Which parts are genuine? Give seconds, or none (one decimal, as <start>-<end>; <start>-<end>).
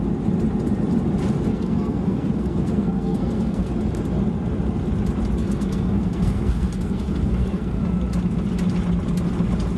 0.0-1.5; 3.7-5.4; 7.8-9.8